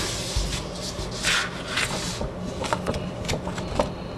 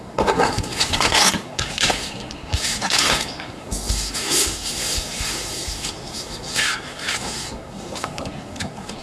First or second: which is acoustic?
first